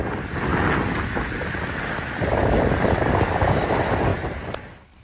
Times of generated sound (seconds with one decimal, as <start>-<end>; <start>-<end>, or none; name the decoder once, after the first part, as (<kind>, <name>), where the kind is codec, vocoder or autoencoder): 4.1-4.6 (vocoder, BigVGAN v2)